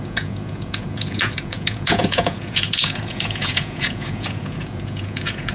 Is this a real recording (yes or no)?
no